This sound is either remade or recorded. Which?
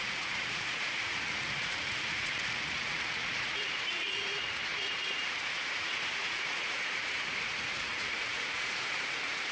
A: remade